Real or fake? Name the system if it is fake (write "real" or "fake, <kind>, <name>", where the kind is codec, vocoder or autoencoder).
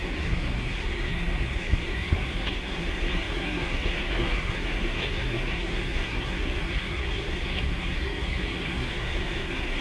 fake, codec, SNAC